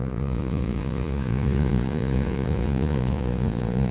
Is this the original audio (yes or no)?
no